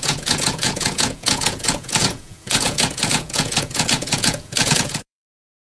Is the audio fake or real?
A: fake